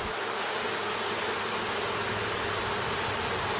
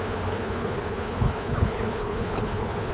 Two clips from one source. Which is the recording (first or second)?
first